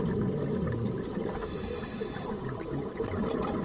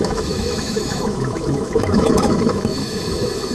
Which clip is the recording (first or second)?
first